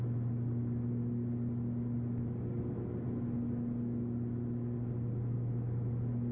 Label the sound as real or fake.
real